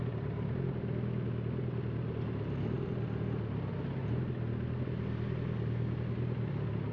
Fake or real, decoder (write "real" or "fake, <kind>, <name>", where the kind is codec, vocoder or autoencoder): real